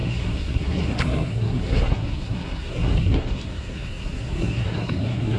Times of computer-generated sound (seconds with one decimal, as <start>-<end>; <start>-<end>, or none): 0.0-5.4